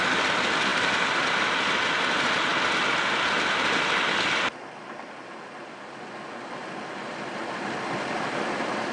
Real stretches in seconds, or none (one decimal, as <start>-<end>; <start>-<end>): 0.0-8.9